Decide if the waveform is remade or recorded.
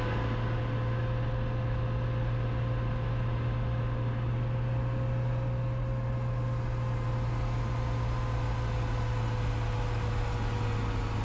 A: recorded